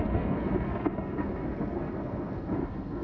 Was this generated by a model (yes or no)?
yes